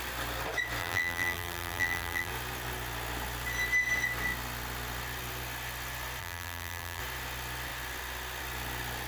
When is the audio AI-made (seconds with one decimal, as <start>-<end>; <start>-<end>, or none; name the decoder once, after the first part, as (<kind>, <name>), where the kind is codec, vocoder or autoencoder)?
0.8-2.3 (vocoder, BigVGAN v2); 6.2-7.0